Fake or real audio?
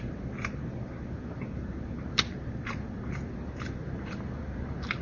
fake